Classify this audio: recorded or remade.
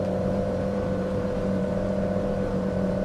remade